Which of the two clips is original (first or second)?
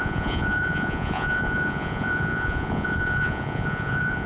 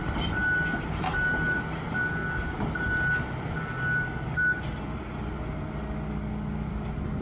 second